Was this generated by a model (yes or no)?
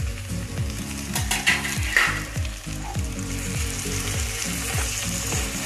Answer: yes